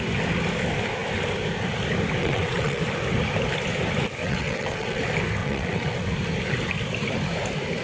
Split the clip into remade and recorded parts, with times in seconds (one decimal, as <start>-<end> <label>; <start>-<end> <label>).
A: 0.0-2.2 recorded; 2.2-2.8 remade; 2.8-4.2 recorded; 4.2-5.0 remade; 5.0-5.4 recorded; 5.4-6.0 remade; 6.0-7.8 recorded